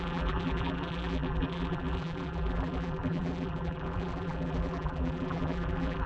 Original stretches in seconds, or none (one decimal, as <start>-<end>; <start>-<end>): none